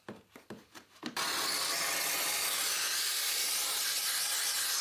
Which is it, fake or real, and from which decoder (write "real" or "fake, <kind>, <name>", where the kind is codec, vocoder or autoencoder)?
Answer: real